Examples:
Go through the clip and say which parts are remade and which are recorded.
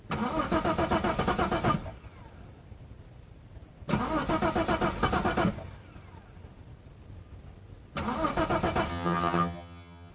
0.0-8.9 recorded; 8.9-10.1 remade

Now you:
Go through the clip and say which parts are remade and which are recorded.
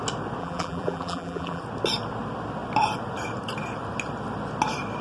0.0-0.4 recorded; 0.4-1.6 remade; 1.6-5.0 recorded